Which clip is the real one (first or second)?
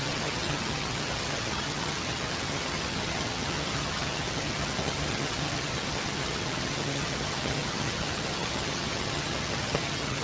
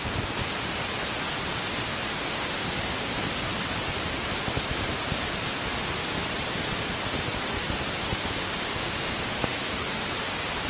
second